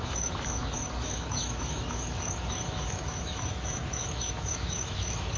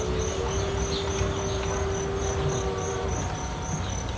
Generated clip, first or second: first